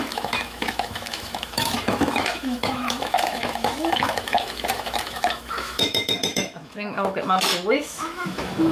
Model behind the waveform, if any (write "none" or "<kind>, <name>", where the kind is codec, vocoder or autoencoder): autoencoder, DAC-VAE